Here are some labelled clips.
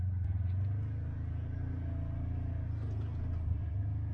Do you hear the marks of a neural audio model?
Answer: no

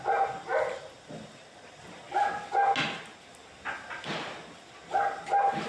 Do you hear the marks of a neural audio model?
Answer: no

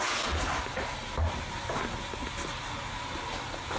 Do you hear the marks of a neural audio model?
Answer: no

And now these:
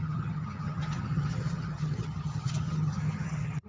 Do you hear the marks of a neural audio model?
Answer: yes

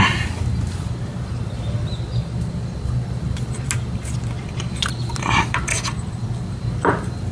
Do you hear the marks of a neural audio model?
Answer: no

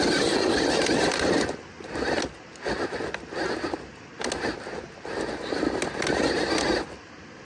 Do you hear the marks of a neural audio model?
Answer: no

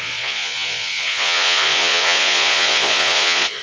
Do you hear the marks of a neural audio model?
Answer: yes